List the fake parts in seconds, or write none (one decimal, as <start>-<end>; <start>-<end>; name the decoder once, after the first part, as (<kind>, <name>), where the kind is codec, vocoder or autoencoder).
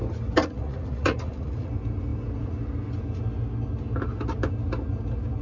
0.4-1.7 (vocoder, Vocos)